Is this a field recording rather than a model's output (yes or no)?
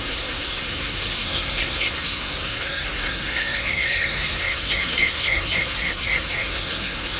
no